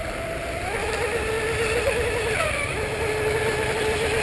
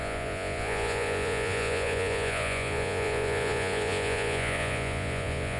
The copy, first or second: second